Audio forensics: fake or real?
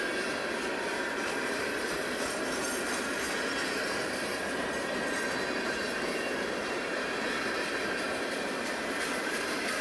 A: fake